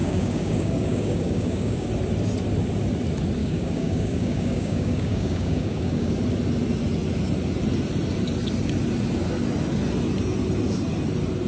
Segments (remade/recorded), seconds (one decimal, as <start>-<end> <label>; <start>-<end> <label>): 0.0-1.9 remade; 1.9-3.4 recorded; 3.4-6.1 remade; 6.1-11.5 recorded